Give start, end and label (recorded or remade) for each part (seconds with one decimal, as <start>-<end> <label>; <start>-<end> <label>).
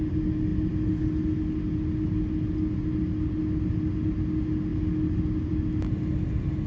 0.0-6.7 recorded